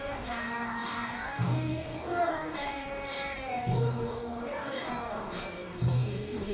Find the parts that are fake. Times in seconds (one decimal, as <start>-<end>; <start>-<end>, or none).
0.0-6.5